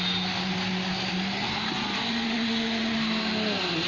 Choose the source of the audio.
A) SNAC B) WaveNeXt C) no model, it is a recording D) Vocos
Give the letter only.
C